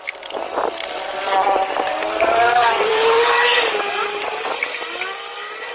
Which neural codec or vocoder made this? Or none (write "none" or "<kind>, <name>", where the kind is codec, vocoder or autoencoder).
vocoder, BigVGAN v2